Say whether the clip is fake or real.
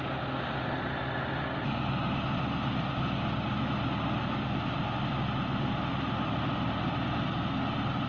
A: real